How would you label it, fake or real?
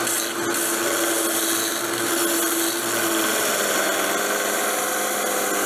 real